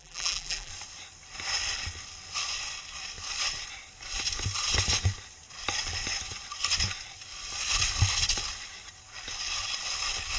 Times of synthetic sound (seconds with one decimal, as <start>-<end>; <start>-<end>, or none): 0.0-0.7